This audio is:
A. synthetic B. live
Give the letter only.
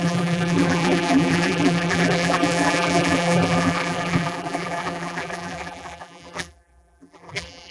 A